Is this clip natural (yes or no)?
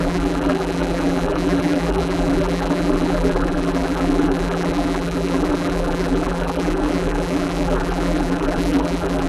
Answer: no